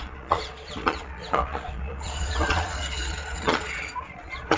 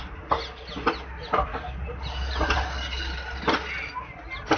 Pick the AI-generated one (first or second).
first